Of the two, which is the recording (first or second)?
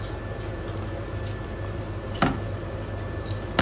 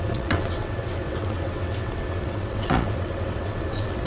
first